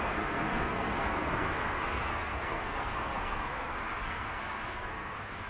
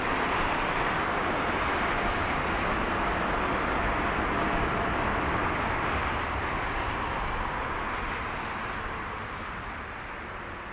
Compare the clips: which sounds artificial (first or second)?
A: first